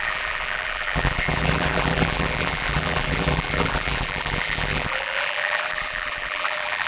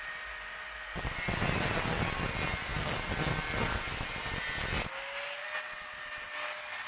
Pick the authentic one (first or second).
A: second